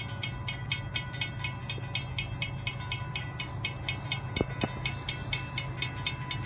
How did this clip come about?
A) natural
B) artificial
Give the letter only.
A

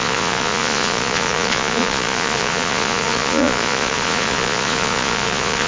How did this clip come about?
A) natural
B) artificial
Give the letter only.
B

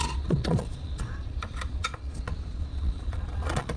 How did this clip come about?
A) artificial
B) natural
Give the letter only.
A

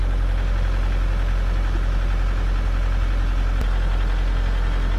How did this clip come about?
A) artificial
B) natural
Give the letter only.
B